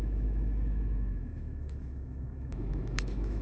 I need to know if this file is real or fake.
fake